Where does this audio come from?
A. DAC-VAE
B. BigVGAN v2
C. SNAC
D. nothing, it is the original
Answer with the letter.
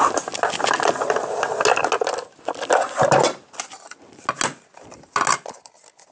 D